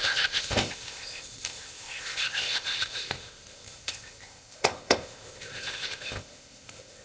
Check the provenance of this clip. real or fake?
fake